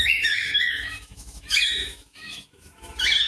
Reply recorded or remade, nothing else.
remade